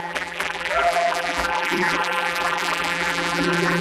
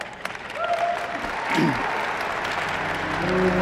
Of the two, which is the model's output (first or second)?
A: first